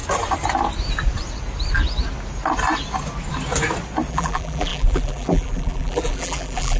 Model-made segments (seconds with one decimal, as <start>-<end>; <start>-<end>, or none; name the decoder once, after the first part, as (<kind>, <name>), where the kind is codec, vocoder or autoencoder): 4.1-6.8 (vocoder, BigVGAN v2)